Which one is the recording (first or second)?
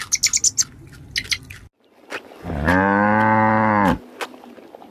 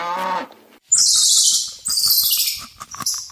first